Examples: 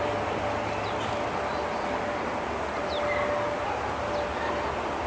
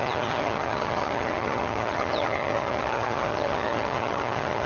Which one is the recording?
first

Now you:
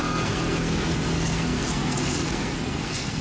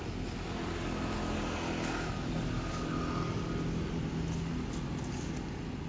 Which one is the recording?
second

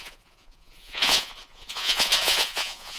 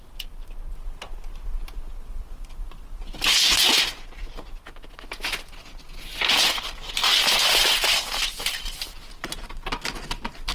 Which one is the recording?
second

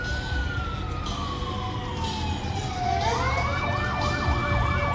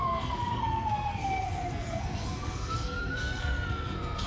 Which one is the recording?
first